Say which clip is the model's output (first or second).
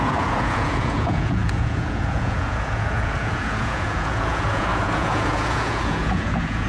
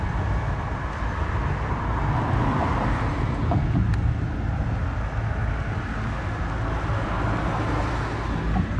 first